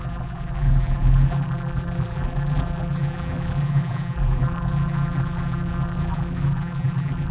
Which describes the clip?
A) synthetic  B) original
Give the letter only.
A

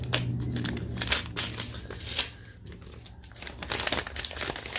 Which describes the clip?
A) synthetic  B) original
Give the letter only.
B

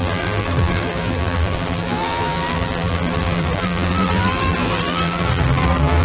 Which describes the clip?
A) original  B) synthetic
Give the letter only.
B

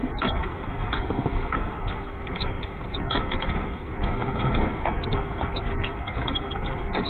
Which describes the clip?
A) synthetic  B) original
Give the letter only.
A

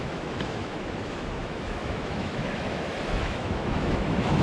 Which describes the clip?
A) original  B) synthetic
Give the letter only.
B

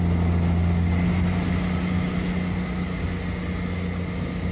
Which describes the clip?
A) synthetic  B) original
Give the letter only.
B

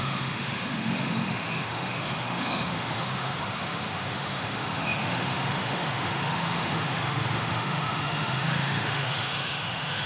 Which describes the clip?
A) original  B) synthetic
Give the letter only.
B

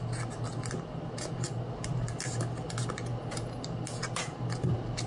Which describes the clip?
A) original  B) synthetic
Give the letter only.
A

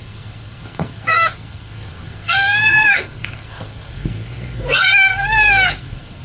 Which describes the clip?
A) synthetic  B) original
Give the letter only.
A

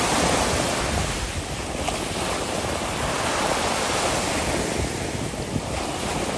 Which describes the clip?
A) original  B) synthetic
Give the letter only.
A